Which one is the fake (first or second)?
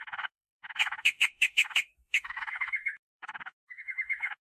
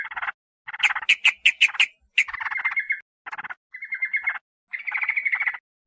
first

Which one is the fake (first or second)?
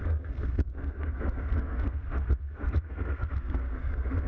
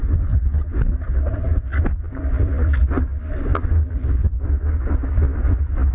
first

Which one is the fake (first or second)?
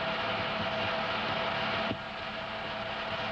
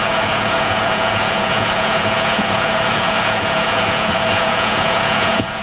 second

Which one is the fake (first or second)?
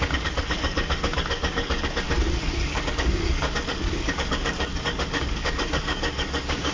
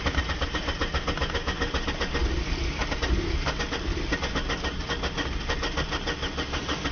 first